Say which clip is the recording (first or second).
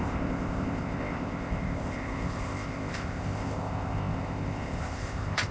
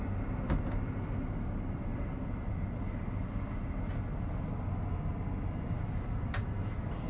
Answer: second